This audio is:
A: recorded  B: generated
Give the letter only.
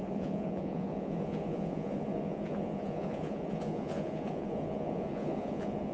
B